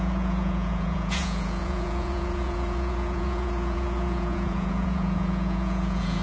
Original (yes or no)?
no